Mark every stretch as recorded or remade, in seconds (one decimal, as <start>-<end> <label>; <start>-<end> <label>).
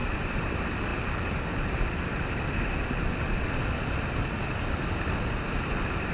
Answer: 0.0-6.1 recorded